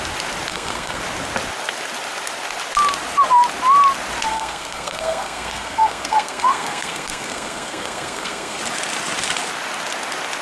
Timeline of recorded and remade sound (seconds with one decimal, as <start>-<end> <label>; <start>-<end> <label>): 0.0-0.5 recorded; 0.5-1.0 remade; 1.0-4.3 recorded; 4.3-8.6 remade; 8.6-10.4 recorded